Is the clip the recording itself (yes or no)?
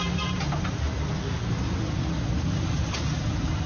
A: yes